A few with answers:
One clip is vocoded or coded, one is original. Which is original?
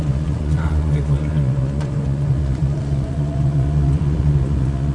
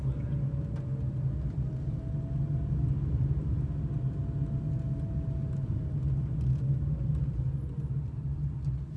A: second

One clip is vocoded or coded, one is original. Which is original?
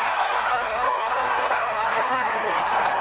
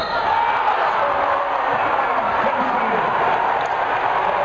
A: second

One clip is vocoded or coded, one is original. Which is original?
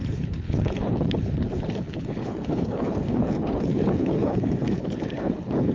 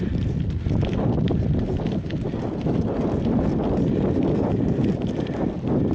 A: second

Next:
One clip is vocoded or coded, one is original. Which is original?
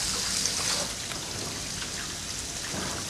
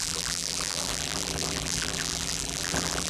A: first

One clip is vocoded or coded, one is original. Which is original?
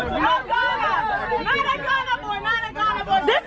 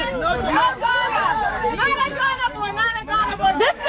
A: first